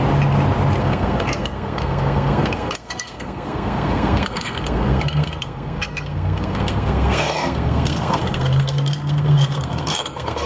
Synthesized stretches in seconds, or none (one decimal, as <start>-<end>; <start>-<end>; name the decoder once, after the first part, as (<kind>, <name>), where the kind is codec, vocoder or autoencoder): 0.8-10.5 (codec, SNAC)